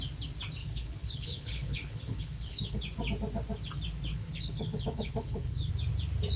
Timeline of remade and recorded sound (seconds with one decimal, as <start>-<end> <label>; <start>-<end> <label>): 0.0-0.6 recorded; 0.6-2.8 remade; 2.8-4.1 recorded; 4.1-5.7 remade; 5.7-6.4 recorded